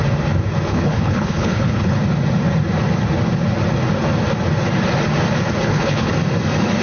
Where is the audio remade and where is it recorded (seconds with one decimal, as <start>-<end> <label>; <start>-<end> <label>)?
0.0-0.7 recorded; 0.7-2.0 remade; 2.0-5.6 recorded; 5.6-6.1 remade; 6.1-6.8 recorded